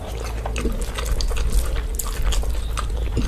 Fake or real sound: real